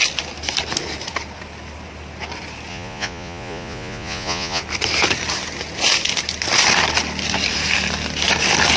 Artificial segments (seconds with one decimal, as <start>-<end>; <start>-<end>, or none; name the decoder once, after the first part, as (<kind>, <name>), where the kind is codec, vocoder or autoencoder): 2.7-4.6 (vocoder, Vocos)